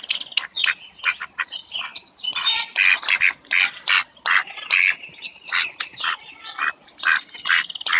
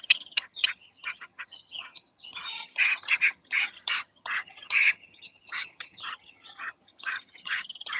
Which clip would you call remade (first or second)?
second